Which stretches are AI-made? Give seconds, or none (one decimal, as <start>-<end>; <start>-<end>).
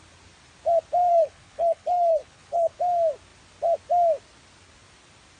1.1-2.8